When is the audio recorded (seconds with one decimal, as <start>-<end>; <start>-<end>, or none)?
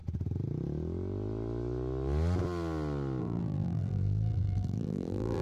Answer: 0.0-3.2